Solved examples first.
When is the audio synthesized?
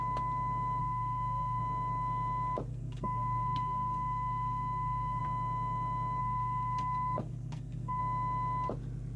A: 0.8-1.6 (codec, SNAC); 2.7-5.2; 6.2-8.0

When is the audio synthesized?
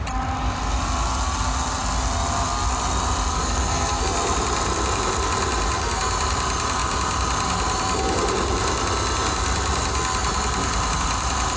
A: 3.3-4.0 (codec, SNAC)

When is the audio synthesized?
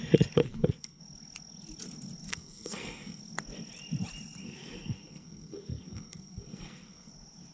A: 0.4-1.0 (codec, SNAC); 2.3-3.2; 4.4-7.1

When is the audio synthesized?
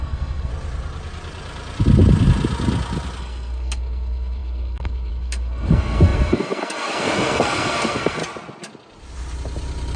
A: 0.0-0.5 (codec, SNAC); 3.2-8.2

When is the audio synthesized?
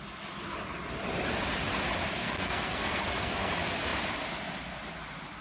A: 2.2-3.5 (codec, SNAC)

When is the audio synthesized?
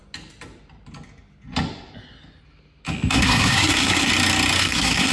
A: 3.1-4.1 (codec, SNAC); 4.6-5.1